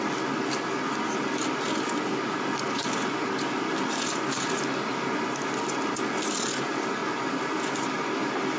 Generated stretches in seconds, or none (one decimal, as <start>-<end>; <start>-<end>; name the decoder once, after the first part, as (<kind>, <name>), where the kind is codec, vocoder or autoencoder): none